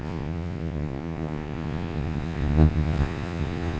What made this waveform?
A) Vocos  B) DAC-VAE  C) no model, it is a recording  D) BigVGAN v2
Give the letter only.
A